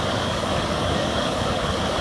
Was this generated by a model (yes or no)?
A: yes